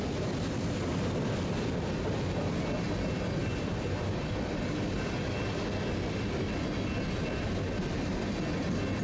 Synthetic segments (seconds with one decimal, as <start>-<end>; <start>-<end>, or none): none